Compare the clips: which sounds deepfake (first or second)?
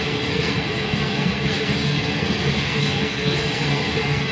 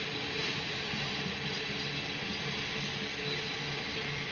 first